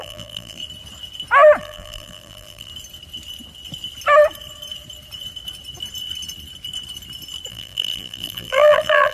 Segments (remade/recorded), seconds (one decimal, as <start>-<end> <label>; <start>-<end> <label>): 0.0-0.6 remade; 0.6-1.6 recorded; 1.6-2.7 remade; 2.7-7.5 recorded; 7.5-9.1 remade